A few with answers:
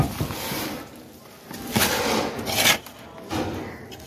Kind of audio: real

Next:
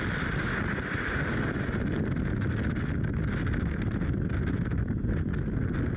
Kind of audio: real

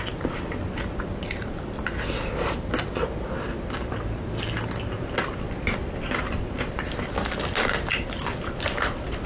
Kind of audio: real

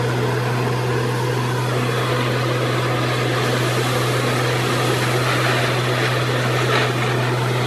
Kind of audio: real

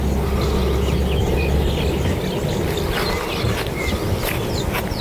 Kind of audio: real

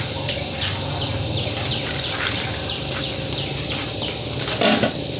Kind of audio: real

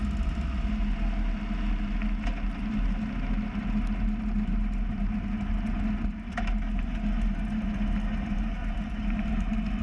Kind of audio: real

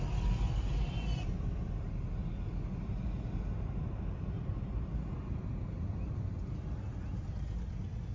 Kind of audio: real